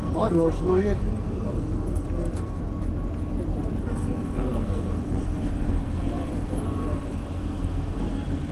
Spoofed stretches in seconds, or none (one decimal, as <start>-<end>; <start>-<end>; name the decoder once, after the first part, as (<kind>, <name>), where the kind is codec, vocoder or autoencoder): 0.0-2.6 (codec, SNAC); 3.8-8.5